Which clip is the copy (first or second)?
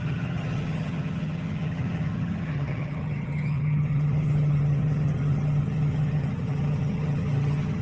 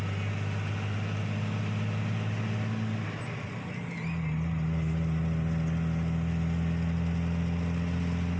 first